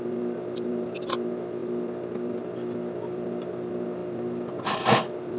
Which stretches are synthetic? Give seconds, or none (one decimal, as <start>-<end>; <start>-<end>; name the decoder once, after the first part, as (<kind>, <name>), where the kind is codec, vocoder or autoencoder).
none